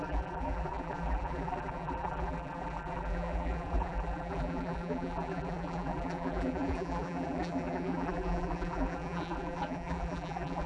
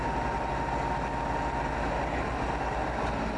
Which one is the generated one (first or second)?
first